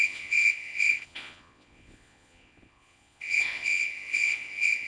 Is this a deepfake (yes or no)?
yes